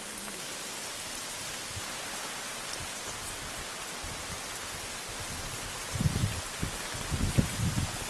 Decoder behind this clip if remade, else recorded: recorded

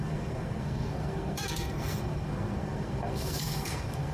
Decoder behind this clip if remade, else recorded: remade, codec, SNAC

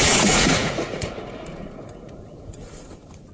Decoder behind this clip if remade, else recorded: remade, vocoder, Vocos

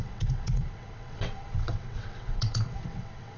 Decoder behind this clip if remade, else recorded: remade, vocoder, WaveNeXt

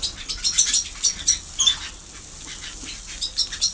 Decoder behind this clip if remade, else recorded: recorded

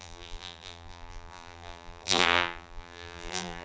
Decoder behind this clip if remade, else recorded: remade, vocoder, BigVGAN v2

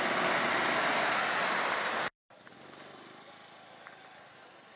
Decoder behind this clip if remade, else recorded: recorded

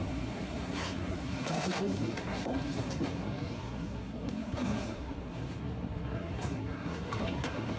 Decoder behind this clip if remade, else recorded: remade, codec, SNAC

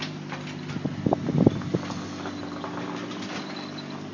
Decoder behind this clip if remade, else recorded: recorded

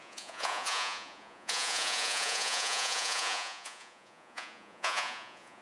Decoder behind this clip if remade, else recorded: remade, vocoder, Vocos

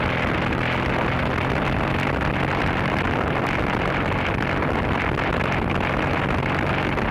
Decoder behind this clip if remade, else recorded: recorded